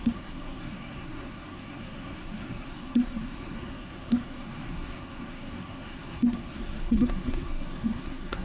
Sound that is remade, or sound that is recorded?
remade